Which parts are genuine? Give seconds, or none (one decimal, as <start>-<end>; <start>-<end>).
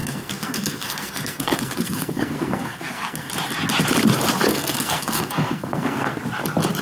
3.3-4.5; 6.2-6.8